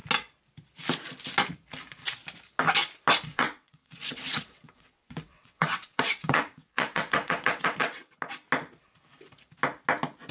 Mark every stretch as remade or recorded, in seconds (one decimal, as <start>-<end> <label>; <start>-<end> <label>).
0.0-3.3 recorded; 3.3-8.2 remade; 8.2-10.3 recorded